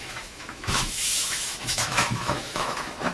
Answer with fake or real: fake